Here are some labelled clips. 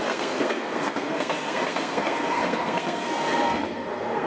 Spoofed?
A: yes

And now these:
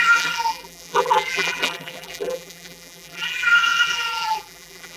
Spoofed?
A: yes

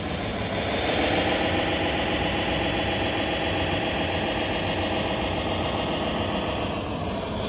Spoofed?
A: no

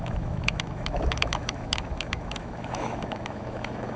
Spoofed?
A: yes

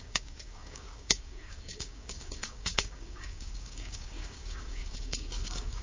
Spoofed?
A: yes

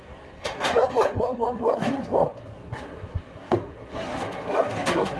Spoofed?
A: yes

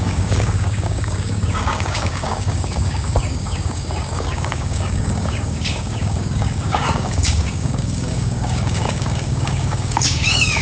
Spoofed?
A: yes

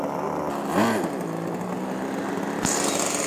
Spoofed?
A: no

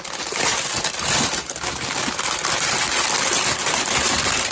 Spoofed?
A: no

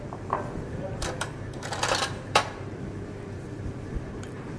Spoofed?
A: yes